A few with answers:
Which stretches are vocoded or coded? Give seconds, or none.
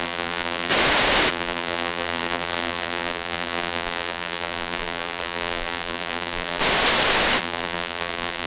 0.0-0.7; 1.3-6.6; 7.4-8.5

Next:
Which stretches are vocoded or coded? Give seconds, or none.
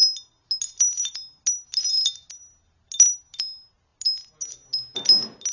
none